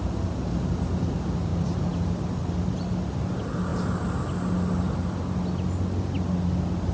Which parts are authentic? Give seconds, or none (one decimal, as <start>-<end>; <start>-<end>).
0.0-6.9